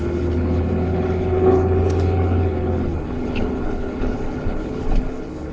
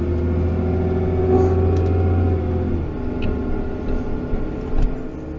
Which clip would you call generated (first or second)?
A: first